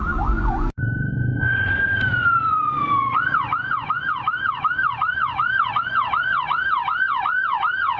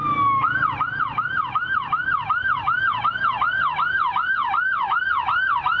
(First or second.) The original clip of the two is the second